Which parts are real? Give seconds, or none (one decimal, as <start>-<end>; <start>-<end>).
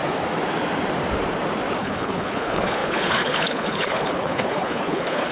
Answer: 0.0-1.8